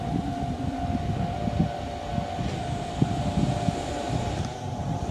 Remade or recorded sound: recorded